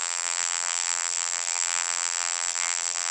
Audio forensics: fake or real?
fake